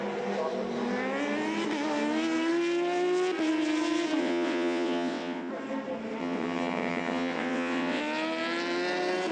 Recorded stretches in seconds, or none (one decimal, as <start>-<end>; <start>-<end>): 0.0-4.2; 5.5-6.2; 8.0-9.3